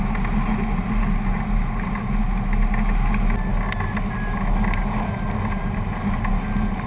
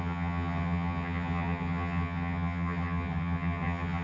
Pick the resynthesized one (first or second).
second